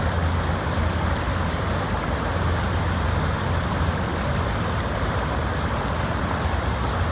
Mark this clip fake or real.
real